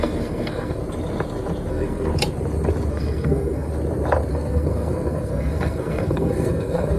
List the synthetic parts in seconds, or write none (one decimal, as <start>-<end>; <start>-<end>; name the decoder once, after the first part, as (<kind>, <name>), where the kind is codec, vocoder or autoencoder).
0.0-0.8 (codec, SNAC); 1.7-2.1; 2.9-3.7; 4.3-7.0